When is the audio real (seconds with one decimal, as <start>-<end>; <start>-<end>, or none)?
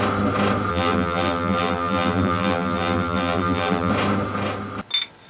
0.0-0.7; 3.9-5.3